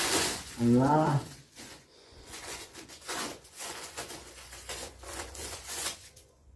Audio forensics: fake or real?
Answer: fake